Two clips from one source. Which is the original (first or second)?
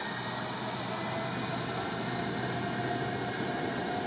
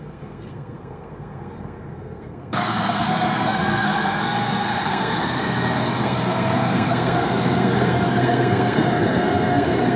first